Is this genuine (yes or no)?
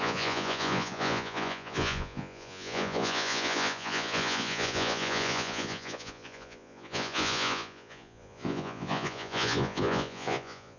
no